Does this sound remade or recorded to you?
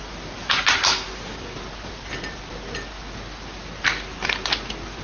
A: recorded